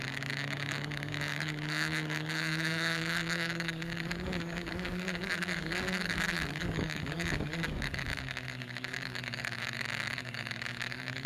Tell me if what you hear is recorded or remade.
remade